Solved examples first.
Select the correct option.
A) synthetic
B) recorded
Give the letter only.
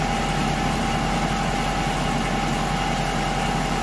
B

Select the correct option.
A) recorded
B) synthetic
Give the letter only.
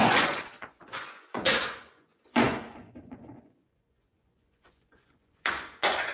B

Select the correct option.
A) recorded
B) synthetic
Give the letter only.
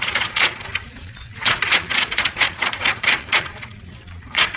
B